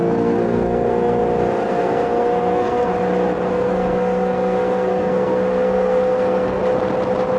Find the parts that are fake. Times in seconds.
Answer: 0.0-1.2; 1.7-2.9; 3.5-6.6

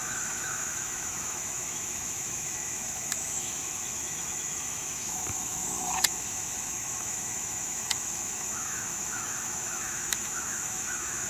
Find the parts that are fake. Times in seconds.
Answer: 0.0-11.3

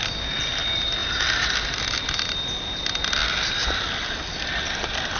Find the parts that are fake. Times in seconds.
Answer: 1.0-4.1